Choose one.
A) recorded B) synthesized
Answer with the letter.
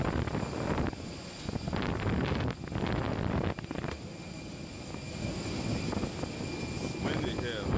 A